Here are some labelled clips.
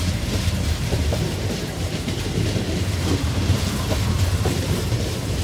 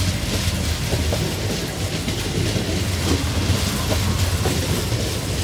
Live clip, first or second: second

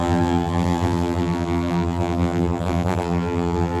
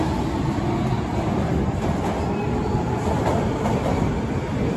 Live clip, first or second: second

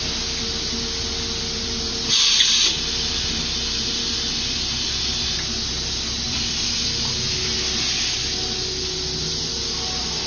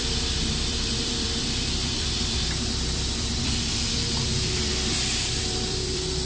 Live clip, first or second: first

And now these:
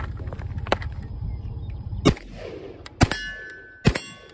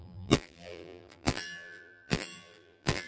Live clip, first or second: first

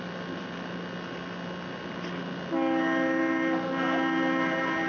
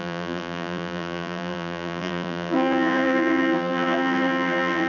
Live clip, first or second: first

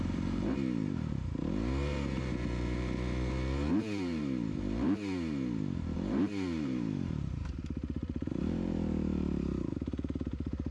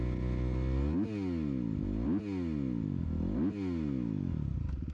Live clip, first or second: second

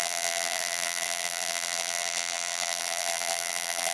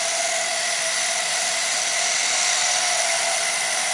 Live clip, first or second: second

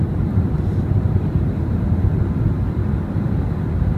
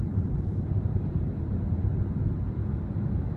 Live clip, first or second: second